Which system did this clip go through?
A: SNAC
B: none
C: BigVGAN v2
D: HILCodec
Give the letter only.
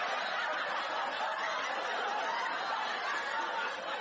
B